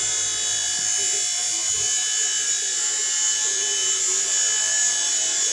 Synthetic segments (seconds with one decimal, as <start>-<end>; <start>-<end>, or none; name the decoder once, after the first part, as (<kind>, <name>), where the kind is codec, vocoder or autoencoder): none